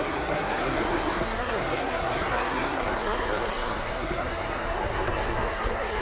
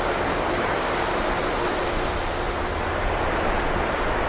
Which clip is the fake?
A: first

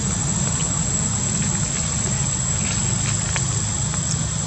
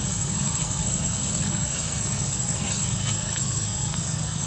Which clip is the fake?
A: second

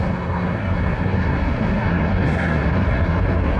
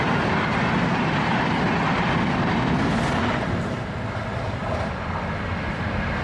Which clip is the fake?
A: first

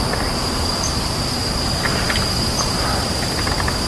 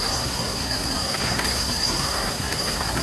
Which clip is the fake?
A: second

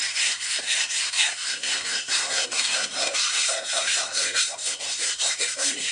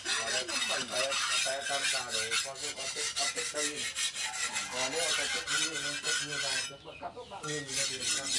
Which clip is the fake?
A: first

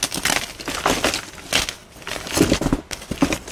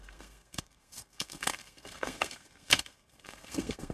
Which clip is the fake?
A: second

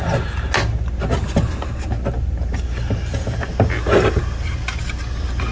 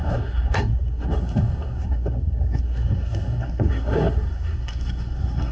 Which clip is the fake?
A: second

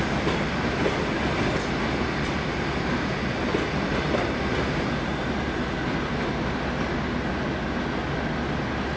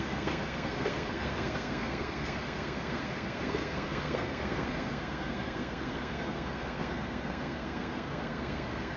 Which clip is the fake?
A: second